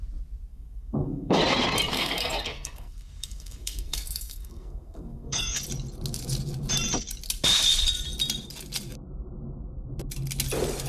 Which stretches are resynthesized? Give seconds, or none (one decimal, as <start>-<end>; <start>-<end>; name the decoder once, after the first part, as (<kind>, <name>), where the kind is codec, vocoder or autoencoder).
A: 0.5-1.4 (codec, SNAC); 1.9-5.6